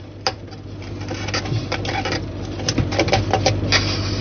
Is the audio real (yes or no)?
yes